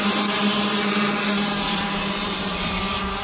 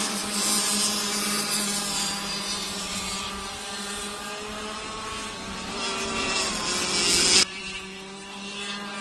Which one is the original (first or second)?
second